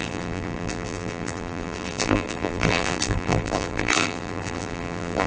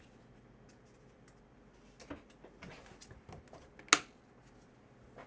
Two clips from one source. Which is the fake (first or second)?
first